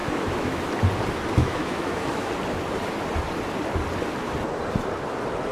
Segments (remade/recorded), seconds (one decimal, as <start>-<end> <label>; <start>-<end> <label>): 0.0-0.7 remade; 0.7-1.4 recorded; 1.4-2.3 remade; 2.3-5.5 recorded